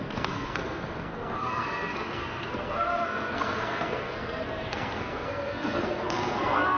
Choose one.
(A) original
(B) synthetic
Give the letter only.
B